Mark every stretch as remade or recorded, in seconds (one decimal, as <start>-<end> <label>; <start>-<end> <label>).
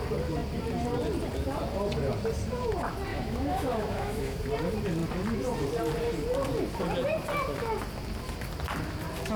0.0-3.1 recorded; 3.1-4.4 remade; 4.4-9.4 recorded